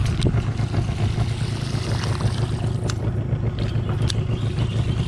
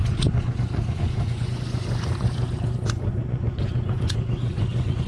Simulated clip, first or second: second